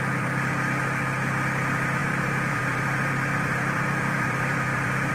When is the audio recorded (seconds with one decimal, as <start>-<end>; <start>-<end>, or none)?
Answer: 0.0-2.0